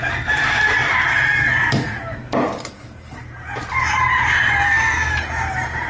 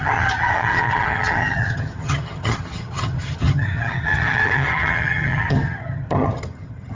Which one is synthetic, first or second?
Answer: second